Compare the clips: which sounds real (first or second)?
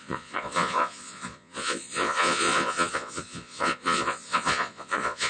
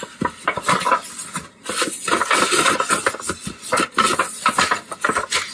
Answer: second